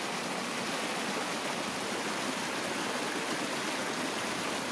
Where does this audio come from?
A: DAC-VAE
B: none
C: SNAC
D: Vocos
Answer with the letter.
B